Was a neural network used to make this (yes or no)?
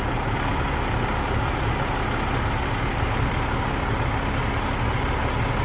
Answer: no